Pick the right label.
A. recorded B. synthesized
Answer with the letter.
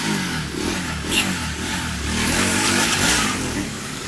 B